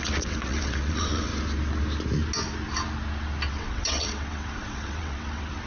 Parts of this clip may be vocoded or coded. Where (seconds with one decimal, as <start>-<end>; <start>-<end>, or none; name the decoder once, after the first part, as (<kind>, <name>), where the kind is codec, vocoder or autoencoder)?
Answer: 0.0-1.3 (vocoder, WaveNeXt); 3.5-5.7